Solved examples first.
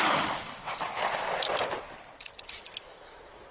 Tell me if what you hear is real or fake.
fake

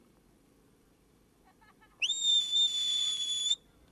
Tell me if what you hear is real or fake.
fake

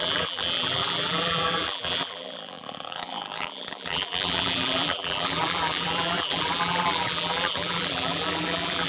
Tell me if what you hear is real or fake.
fake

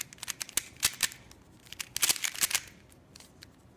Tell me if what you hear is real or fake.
real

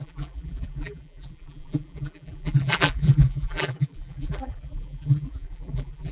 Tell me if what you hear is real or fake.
fake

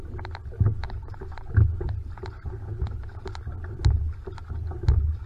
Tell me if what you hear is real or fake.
real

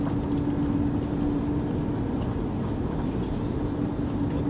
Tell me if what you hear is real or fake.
real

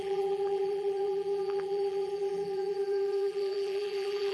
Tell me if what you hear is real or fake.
fake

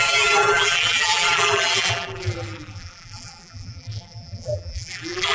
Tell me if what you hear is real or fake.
fake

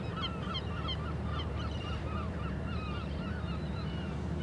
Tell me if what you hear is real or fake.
fake